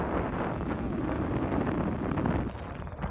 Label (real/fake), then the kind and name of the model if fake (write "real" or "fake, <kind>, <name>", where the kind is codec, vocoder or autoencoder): real